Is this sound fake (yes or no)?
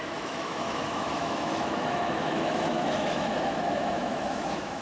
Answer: yes